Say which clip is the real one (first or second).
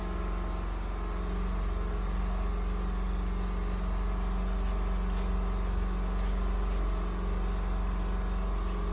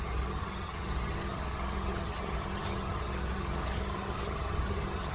first